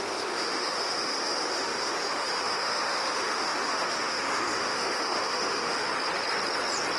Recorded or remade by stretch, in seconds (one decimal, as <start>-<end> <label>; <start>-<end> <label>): 0.0-5.9 remade; 5.9-7.0 recorded